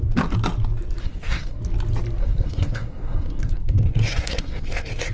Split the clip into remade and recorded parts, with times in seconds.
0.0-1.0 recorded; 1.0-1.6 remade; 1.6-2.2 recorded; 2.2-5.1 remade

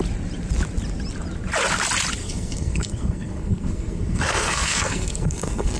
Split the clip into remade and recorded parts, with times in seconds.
0.0-2.2 recorded; 2.2-5.8 remade

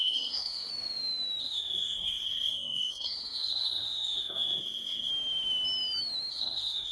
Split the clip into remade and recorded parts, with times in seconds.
0.0-0.7 remade; 0.7-1.4 recorded; 1.4-5.1 remade; 5.1-6.3 recorded; 6.3-6.9 remade

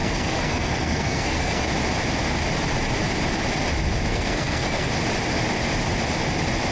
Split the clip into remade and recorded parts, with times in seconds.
0.0-1.7 remade; 1.7-4.1 recorded; 4.1-4.9 remade; 4.9-6.7 recorded

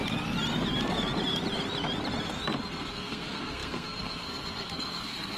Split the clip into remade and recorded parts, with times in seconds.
0.0-2.9 recorded; 2.9-5.4 remade

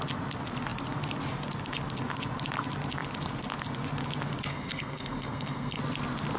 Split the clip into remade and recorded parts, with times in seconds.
0.0-4.5 recorded; 4.5-5.8 remade; 5.8-6.4 recorded